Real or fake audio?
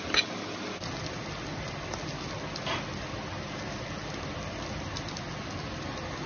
real